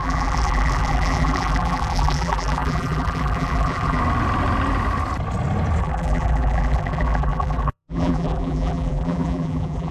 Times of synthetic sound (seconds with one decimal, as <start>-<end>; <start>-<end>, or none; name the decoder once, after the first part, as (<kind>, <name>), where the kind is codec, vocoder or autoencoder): 0.0-4.0 (vocoder, BigVGAN v2); 5.8-9.9